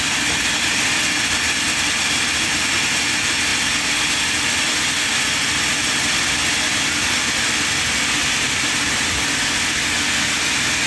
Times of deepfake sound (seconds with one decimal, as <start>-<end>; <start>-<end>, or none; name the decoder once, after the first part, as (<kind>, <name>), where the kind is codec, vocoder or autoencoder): none